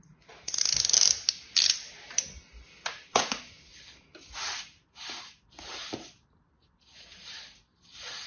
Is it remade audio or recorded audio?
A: recorded